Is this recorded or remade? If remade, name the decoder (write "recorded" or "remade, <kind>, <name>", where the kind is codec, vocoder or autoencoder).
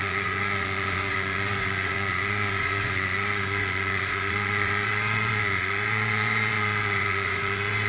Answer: remade, vocoder, Vocos